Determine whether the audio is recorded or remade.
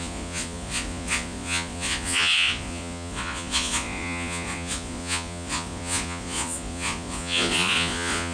remade